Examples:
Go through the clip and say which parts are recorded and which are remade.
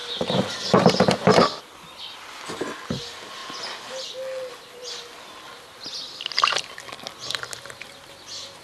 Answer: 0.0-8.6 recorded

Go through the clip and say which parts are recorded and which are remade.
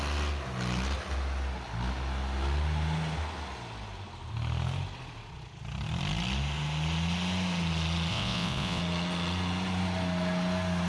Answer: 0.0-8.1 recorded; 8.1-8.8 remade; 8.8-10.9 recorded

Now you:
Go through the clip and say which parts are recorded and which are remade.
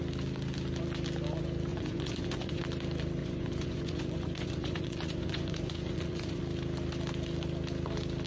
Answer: 0.0-1.7 recorded; 1.7-2.6 remade; 2.6-3.2 recorded; 3.2-6.4 remade; 6.4-8.3 recorded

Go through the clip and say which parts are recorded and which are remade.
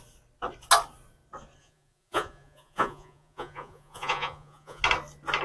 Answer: 0.0-1.6 recorded; 1.6-4.8 remade; 4.8-5.4 recorded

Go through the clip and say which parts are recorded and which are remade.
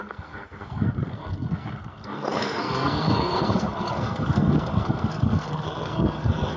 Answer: 0.0-6.6 remade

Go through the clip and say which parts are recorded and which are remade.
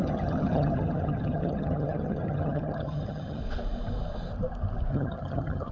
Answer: 0.0-3.4 remade; 3.4-4.9 recorded; 4.9-5.7 remade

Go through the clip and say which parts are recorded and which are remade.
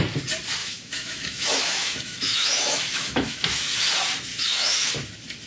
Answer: 0.0-0.6 recorded; 0.6-3.9 remade; 3.9-4.3 recorded; 4.3-4.9 remade; 4.9-5.5 recorded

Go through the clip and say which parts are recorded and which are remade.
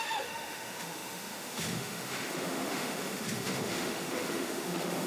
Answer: 0.0-5.1 remade